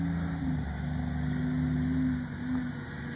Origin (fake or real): real